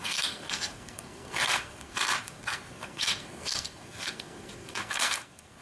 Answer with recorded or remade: remade